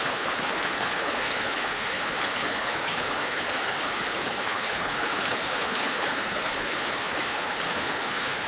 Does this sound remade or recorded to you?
remade